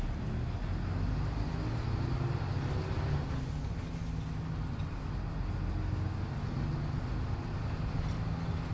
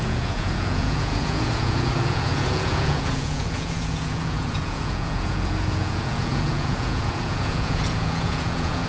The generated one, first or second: second